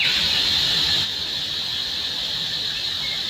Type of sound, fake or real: real